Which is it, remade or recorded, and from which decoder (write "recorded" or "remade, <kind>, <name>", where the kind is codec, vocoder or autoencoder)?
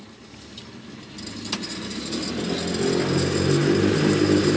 recorded